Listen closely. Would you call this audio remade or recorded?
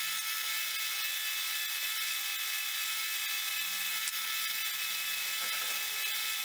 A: recorded